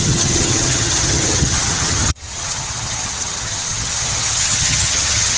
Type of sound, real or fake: fake